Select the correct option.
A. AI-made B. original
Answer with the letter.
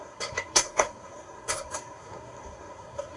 A